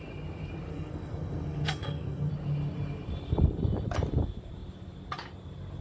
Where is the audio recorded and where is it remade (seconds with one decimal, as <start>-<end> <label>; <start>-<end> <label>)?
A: 0.0-0.7 recorded; 0.7-2.3 remade; 2.3-5.8 recorded